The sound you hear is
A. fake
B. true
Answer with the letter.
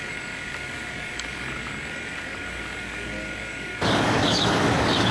A